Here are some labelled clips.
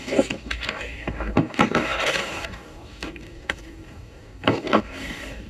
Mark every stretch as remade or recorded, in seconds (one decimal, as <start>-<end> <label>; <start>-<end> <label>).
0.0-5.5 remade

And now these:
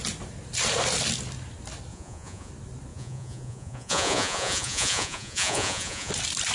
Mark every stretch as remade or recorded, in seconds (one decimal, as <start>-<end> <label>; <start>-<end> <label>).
0.0-1.9 recorded; 1.9-2.5 remade; 2.5-2.9 recorded; 2.9-6.1 remade; 6.1-6.5 recorded

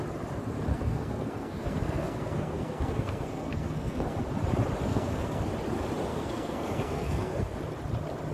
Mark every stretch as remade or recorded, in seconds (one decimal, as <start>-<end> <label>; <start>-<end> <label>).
0.0-0.7 recorded; 0.7-4.2 remade; 4.2-4.9 recorded; 4.9-5.5 remade; 5.5-6.1 recorded; 6.1-7.6 remade; 7.6-8.3 recorded

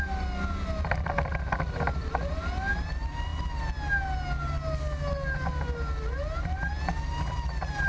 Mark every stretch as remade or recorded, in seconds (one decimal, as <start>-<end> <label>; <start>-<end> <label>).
0.0-7.9 recorded

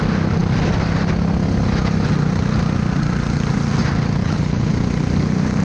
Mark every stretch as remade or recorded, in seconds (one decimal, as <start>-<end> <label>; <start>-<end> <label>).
0.0-4.2 recorded; 4.2-4.7 remade; 4.7-5.6 recorded